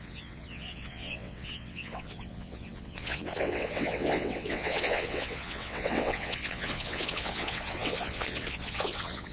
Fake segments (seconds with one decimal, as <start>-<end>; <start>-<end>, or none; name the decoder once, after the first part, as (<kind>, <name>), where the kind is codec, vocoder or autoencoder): 0.0-9.3 (vocoder, WaveNeXt)